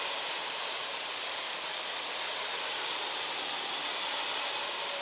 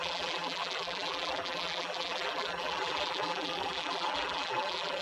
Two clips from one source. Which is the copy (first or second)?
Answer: second